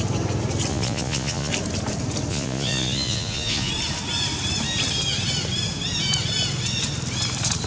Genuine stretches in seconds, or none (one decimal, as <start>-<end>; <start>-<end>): 0.0-0.7; 1.5-2.3; 3.7-7.7

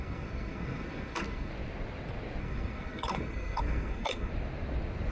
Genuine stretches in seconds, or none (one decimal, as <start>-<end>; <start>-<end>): 1.5-2.4; 4.3-5.1

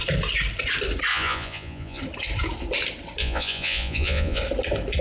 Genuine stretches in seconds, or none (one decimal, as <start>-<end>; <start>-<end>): 0.0-1.1; 2.0-3.2; 4.4-5.0

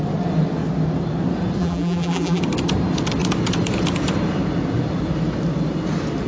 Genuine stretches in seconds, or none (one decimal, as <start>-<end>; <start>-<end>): 0.0-1.6; 2.4-6.3